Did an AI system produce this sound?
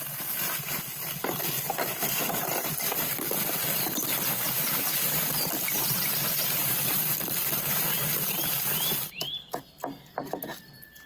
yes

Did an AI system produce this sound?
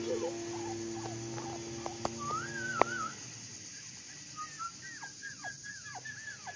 no